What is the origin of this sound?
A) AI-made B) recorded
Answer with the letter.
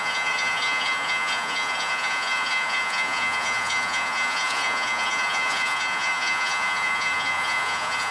A